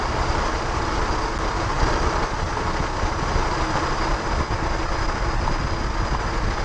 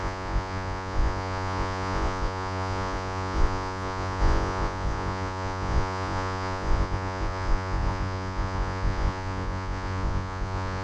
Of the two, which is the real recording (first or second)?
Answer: first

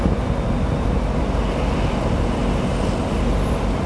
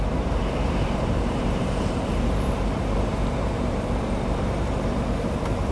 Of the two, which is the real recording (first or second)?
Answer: first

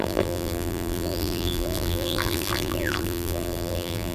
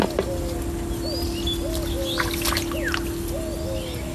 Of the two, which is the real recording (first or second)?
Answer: second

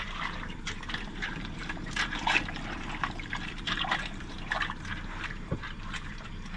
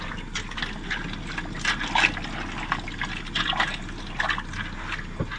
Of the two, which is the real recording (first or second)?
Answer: second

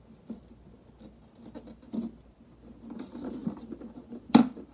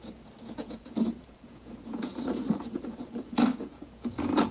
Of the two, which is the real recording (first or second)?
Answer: first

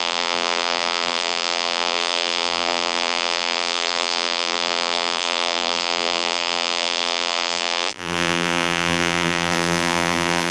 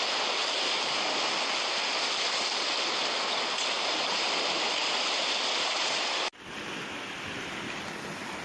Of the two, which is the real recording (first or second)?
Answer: second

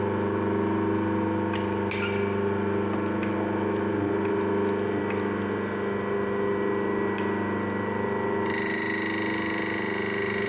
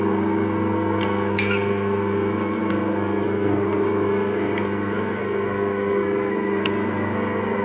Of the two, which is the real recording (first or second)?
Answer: first